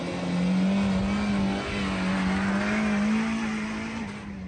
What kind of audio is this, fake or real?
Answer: real